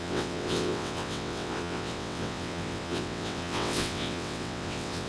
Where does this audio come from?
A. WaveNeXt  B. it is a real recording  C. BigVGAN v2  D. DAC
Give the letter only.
A